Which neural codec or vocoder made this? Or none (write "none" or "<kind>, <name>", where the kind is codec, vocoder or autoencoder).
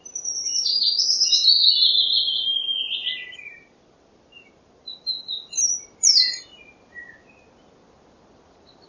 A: none